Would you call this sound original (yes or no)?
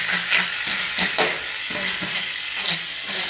yes